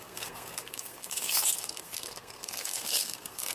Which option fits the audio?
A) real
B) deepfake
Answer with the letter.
B